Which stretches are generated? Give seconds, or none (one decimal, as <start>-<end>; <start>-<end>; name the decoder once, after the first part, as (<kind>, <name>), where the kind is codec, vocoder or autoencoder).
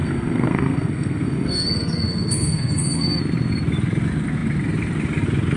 0.0-3.2 (codec, SNAC)